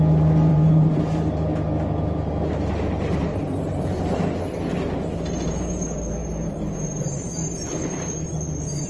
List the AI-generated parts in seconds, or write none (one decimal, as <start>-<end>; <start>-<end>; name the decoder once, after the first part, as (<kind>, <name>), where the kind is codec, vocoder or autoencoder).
0.5-1.0 (vocoder, BigVGAN v2); 3.3-4.0; 6.2-7.8